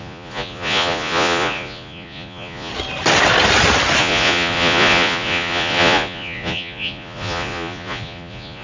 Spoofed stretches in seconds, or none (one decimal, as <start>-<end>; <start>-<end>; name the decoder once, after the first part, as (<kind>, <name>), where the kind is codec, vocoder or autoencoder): 0.0-2.7 (vocoder, Vocos); 4.0-8.6